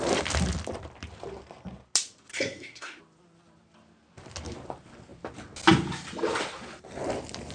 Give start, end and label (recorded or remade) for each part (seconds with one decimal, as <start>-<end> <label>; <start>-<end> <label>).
0.0-2.3 recorded; 2.3-3.0 remade; 3.0-7.5 recorded